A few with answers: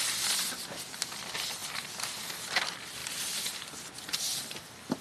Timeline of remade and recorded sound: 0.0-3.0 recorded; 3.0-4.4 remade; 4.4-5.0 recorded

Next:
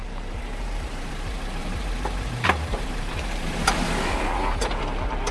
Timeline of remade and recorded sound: 0.0-1.1 remade; 1.1-1.6 recorded; 1.6-4.8 remade; 4.8-5.3 recorded